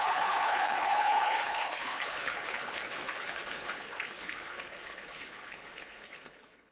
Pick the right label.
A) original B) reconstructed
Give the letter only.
B